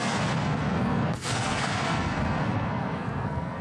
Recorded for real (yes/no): no